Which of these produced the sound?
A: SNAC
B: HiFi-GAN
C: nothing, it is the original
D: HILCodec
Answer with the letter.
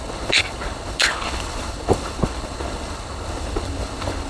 D